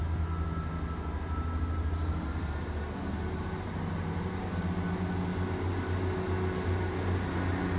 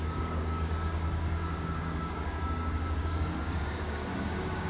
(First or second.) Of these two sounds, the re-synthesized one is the second